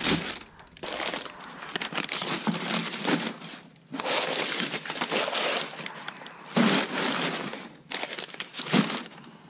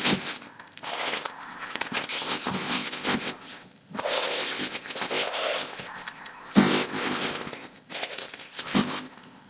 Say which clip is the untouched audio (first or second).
first